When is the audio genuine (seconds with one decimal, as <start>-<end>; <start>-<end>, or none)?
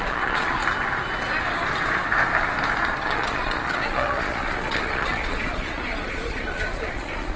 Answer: 0.6-3.0